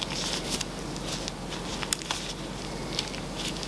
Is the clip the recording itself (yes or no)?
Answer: yes